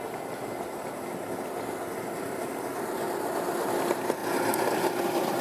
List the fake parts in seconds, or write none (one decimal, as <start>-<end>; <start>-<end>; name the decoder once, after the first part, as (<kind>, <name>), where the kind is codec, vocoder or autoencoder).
none